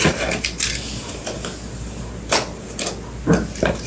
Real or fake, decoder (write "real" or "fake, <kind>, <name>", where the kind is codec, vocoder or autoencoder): real